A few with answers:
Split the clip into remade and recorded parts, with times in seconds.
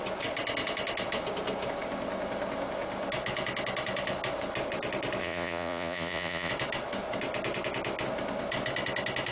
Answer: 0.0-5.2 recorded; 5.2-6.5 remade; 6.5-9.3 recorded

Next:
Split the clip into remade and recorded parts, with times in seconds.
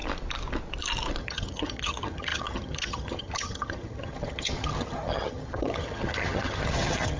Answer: 0.0-1.2 recorded; 1.2-7.2 remade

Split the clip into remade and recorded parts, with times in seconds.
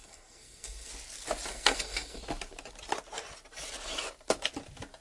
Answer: 0.0-0.9 remade; 0.9-1.5 recorded; 1.5-2.2 remade; 2.2-5.0 recorded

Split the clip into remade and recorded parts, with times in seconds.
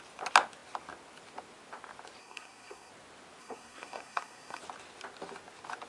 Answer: 0.0-2.2 recorded; 2.2-2.9 remade; 2.9-3.4 recorded; 3.4-4.6 remade; 4.6-5.9 recorded